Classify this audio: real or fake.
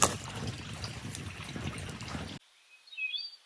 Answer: real